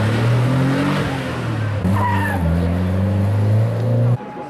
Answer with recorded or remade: recorded